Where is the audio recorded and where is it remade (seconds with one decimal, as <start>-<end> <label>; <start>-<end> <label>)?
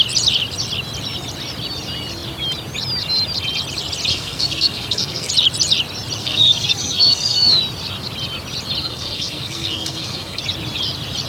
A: 0.0-4.1 recorded; 4.1-5.3 remade; 5.3-6.2 recorded; 6.2-7.6 remade; 7.6-8.8 recorded; 8.8-10.4 remade; 10.4-11.3 recorded